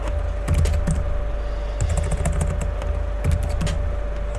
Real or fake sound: real